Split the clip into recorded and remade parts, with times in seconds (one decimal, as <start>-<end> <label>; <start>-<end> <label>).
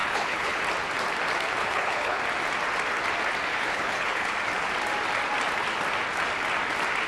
0.0-0.6 remade; 0.6-1.6 recorded; 1.6-2.2 remade; 2.2-3.5 recorded; 3.5-4.3 remade; 4.3-7.1 recorded